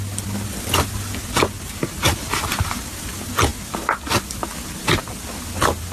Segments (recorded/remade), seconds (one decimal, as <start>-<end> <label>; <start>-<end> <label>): 0.0-5.9 recorded